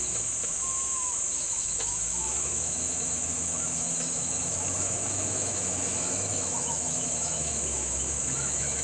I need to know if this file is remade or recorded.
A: remade